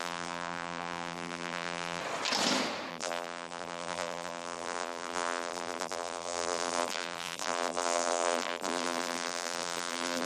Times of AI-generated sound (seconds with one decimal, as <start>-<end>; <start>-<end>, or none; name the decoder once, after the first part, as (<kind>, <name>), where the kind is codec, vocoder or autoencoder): 0.0-2.0 (vocoder, BigVGAN v2); 2.9-10.2